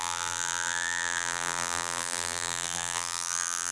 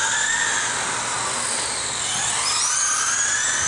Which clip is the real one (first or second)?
second